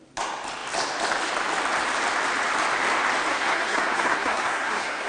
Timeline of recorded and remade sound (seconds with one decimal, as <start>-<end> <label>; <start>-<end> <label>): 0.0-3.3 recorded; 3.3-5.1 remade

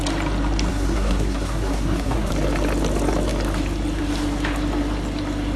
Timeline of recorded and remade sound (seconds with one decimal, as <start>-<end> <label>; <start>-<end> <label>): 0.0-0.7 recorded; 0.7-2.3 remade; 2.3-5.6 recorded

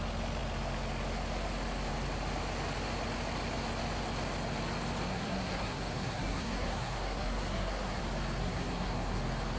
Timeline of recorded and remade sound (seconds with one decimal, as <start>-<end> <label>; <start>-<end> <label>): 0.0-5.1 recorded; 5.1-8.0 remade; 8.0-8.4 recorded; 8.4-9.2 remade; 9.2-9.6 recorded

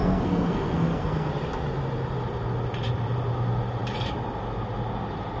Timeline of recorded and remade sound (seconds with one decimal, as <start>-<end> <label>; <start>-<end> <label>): 0.0-1.3 remade; 1.3-5.4 recorded

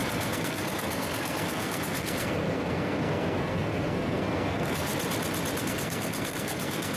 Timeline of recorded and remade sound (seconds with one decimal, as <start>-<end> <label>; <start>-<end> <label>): 0.0-4.9 remade; 4.9-5.6 recorded; 5.6-7.0 remade

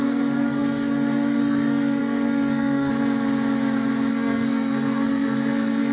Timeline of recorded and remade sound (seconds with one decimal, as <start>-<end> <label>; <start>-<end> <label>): 0.0-2.9 remade; 2.9-4.1 recorded; 4.1-5.9 remade